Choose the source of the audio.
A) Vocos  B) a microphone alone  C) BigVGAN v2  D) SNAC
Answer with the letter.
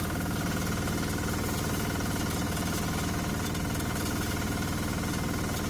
B